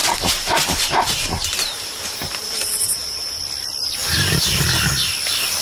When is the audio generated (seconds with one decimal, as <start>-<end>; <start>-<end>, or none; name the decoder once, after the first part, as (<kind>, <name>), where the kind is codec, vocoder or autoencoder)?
0.0-3.4 (vocoder, BigVGAN v2); 4.0-4.6